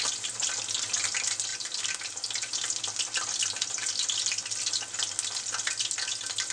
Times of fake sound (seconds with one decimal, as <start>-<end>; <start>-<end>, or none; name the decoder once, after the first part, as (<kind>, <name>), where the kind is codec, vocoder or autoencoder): none